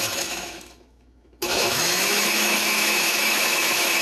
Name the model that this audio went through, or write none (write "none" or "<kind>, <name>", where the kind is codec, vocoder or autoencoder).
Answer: autoencoder, DAC-VAE